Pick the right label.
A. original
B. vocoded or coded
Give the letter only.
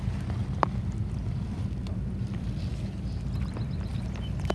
B